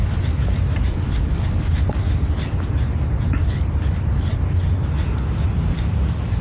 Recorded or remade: recorded